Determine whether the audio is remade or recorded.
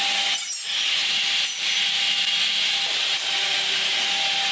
recorded